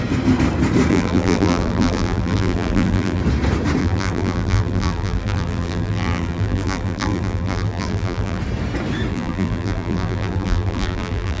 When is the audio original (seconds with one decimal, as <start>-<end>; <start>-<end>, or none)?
0.0-0.9; 3.2-3.8; 8.4-9.1